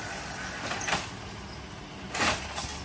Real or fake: real